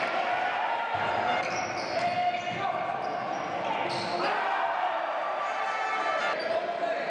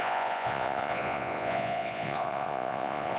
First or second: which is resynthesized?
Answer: second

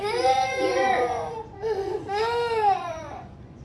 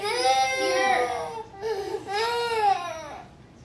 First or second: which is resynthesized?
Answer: first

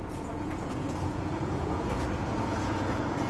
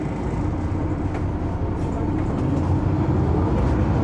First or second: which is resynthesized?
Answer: first